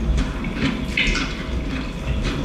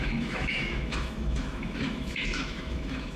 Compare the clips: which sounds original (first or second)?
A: first